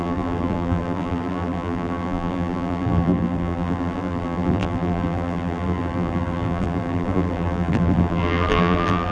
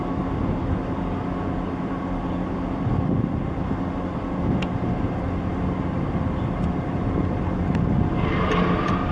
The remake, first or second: first